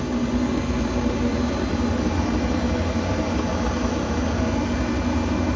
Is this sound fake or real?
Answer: real